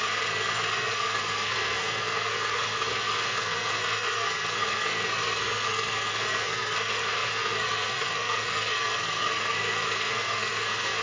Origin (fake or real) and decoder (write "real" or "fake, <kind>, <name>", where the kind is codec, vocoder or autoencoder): fake, codec, SNAC